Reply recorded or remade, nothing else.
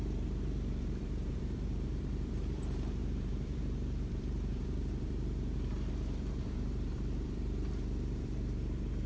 remade